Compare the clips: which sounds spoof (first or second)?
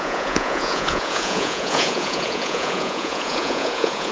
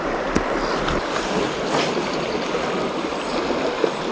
first